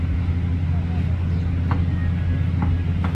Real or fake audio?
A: real